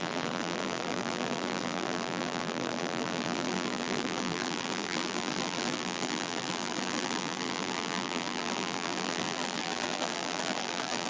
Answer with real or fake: fake